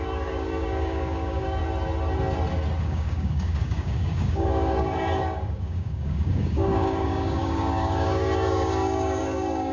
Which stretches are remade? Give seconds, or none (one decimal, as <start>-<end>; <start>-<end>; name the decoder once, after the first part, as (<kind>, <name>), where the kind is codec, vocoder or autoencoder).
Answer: 0.0-1.6 (codec, DAC); 2.8-9.7